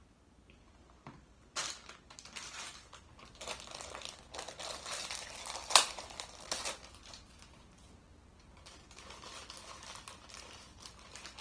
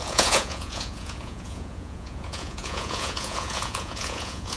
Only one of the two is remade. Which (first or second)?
second